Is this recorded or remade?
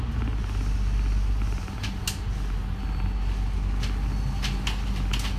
recorded